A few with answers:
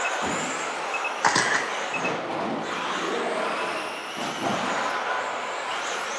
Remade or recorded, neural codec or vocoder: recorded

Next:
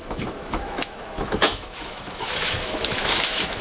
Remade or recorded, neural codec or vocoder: remade, autoencoder, DAC-VAE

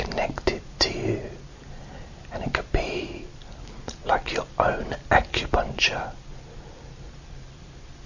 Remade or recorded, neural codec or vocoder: recorded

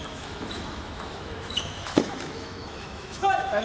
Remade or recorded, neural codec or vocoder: remade, autoencoder, DAC-VAE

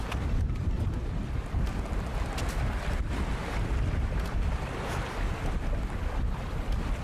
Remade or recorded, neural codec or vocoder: recorded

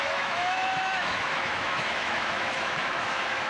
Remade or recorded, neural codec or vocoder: remade, autoencoder, DAC-VAE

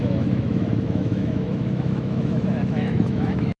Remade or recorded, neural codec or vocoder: remade, autoencoder, DAC-VAE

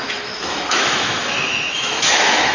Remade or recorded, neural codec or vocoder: remade, autoencoder, DAC-VAE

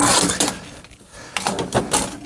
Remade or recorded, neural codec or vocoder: recorded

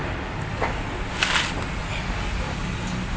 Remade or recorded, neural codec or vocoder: recorded